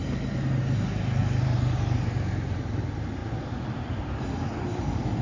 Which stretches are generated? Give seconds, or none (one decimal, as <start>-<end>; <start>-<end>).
none